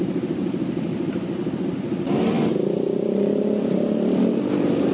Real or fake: real